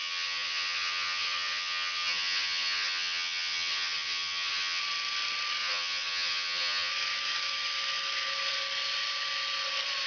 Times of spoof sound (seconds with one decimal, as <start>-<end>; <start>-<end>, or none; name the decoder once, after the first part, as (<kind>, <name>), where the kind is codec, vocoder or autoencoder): 0.0-4.8 (vocoder, HiFi-GAN); 5.6-6.9